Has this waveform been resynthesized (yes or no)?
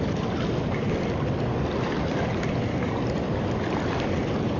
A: no